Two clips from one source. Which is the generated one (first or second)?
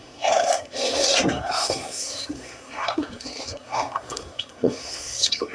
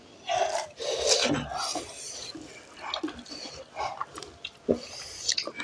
first